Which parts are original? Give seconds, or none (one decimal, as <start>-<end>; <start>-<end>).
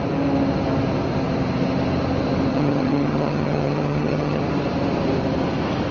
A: 0.0-2.5; 4.4-5.9